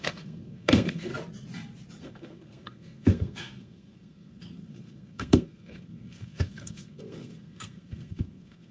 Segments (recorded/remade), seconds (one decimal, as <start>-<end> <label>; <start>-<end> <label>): 0.0-1.1 remade; 1.1-2.0 recorded; 2.0-8.7 remade